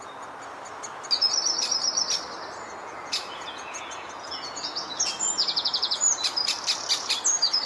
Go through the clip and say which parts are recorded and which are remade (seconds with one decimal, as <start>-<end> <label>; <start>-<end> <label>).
0.0-2.8 recorded; 2.8-6.1 remade; 6.1-7.7 recorded